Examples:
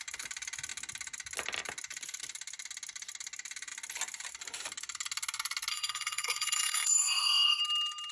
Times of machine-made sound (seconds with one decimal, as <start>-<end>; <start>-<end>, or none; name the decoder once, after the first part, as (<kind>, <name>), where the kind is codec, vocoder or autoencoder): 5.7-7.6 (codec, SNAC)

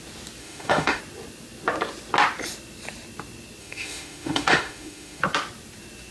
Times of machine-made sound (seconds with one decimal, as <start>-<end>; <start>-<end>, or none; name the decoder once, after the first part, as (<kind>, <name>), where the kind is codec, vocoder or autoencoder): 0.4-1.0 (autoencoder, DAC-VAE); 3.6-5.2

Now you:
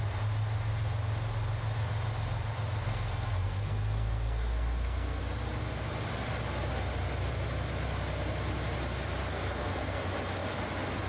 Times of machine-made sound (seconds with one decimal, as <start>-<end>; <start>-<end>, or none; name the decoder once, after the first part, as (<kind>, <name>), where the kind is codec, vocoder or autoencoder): 2.8-5.2 (codec, SNAC); 9.3-10.0

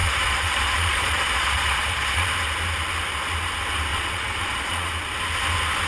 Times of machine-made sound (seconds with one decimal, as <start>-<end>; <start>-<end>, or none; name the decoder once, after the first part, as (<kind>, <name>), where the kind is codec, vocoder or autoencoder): 0.0-2.3 (vocoder, Vocos); 3.9-4.9

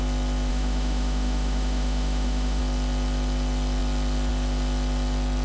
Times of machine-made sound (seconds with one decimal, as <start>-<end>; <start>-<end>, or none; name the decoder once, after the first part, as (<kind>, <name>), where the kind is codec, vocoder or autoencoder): 0.5-2.6 (autoencoder, DAC-VAE)

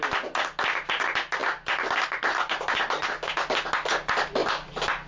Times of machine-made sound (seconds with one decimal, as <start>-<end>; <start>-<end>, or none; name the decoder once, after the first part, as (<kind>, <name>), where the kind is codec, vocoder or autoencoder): 1.4-3.1 (vocoder, BigVGAN v2); 4.4-5.1